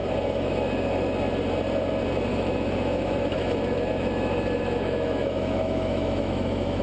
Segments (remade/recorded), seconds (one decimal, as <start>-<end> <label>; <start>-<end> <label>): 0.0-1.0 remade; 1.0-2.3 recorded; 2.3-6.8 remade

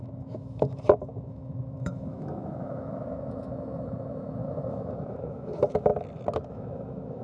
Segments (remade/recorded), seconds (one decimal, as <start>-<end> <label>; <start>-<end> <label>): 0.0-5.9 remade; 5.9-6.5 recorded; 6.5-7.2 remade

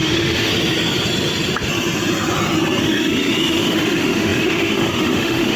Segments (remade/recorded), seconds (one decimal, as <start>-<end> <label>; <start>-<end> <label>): 0.0-0.5 remade; 0.5-2.8 recorded; 2.8-5.6 remade

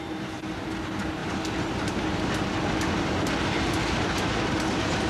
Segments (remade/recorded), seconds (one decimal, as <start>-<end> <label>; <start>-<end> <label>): 0.0-5.1 recorded

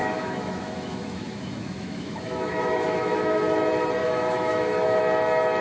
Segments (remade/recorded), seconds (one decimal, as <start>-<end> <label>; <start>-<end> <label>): 0.0-3.4 remade; 3.4-4.0 recorded; 4.0-5.0 remade; 5.0-5.6 recorded

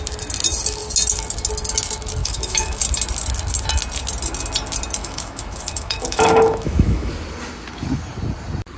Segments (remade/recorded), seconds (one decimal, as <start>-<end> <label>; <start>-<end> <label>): 0.0-2.2 recorded; 2.2-2.8 remade; 2.8-5.0 recorded; 5.0-7.1 remade; 7.1-8.8 recorded